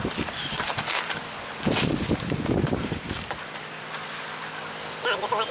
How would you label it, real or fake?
real